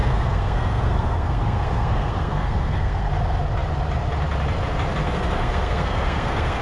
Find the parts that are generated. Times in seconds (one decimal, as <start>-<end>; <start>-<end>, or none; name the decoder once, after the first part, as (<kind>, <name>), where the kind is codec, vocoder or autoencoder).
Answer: 0.0-3.1 (codec, SNAC); 5.0-6.6